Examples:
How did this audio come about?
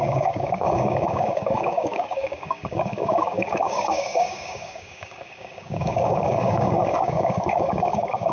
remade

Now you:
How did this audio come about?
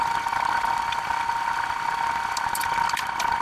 recorded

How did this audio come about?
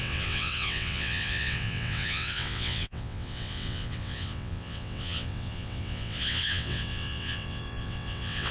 remade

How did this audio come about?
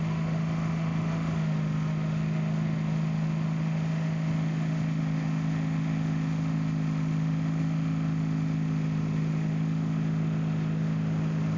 remade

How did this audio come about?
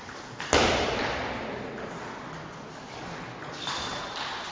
recorded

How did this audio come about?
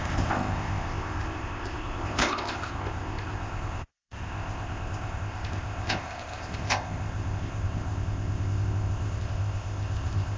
remade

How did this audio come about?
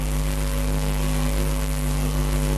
remade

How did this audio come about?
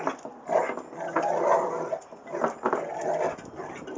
recorded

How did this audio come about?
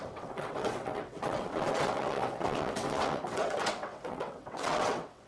remade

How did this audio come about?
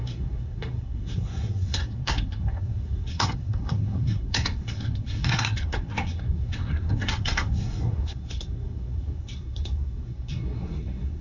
remade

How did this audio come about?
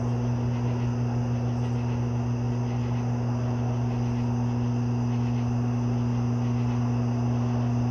recorded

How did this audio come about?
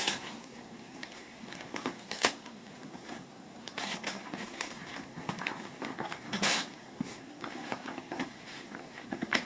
remade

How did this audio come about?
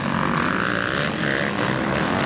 recorded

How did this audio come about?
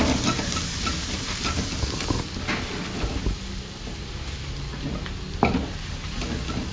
recorded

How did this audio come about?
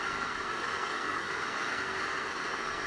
remade